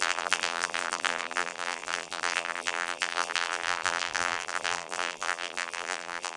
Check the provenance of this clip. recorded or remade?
remade